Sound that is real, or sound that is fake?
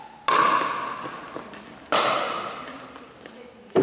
real